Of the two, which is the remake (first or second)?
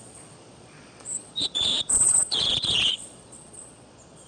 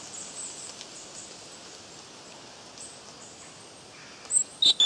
first